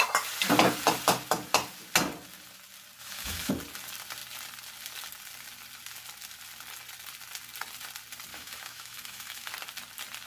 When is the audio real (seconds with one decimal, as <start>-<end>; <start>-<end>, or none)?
0.0-3.0; 3.5-8.3; 9.5-10.3